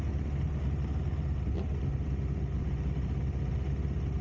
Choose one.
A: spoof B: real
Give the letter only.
B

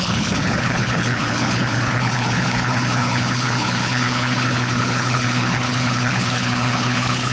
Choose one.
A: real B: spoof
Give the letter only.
B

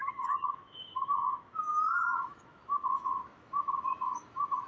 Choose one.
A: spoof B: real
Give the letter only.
A